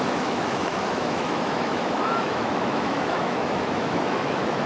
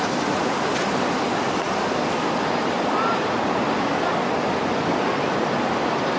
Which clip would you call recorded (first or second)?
second